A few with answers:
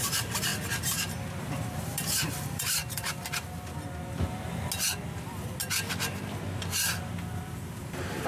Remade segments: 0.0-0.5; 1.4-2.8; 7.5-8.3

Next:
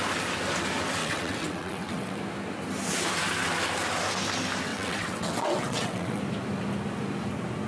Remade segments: 1.0-2.2; 4.7-6.2